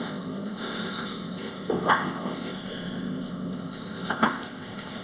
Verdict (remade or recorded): remade